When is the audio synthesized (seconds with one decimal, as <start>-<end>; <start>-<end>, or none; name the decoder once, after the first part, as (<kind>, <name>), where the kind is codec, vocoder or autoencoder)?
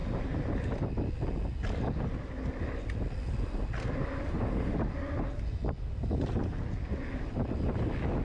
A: none